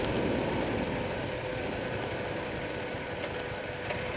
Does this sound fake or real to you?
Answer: real